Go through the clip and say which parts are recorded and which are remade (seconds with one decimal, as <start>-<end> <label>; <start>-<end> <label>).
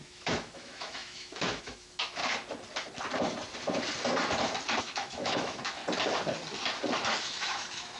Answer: 0.0-2.2 remade; 2.2-4.8 recorded; 4.8-5.8 remade; 5.8-7.2 recorded; 7.2-8.0 remade